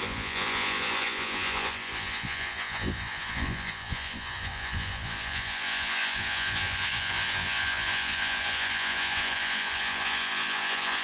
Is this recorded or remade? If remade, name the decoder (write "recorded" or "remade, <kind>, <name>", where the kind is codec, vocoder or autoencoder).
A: remade, vocoder, Vocos